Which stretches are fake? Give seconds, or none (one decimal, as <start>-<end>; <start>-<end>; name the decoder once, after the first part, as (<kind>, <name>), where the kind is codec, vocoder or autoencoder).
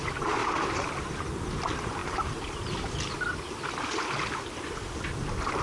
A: none